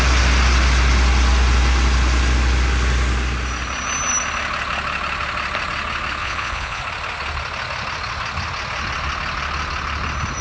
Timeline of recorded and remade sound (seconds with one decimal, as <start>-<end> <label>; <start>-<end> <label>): 0.0-6.2 recorded; 6.2-6.8 remade; 6.8-10.4 recorded